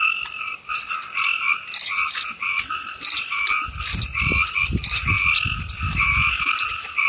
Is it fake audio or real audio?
real